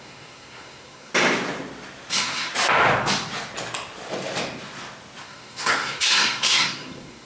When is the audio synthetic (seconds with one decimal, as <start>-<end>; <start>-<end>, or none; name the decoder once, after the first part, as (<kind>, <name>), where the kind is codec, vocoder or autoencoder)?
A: 0.0-1.1 (codec, SNAC); 2.1-2.5; 5.2-7.3